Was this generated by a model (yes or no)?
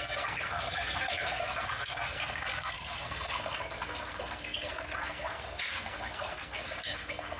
yes